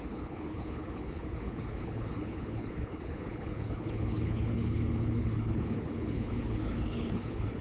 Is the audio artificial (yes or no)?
yes